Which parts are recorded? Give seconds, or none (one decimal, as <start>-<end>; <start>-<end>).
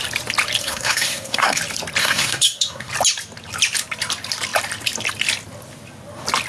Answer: 0.0-0.6; 1.6-2.0; 2.9-6.5